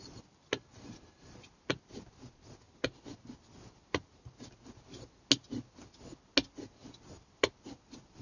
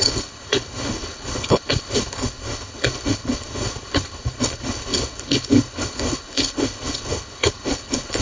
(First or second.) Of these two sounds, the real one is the first